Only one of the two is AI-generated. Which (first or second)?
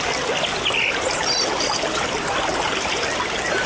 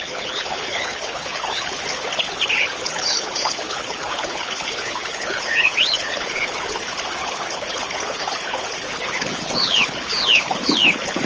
second